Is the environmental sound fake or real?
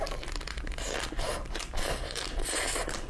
real